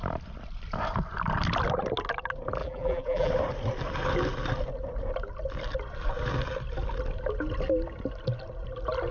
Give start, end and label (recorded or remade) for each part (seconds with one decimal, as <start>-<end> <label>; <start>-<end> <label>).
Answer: 0.0-2.6 recorded; 2.6-3.3 remade; 3.3-9.1 recorded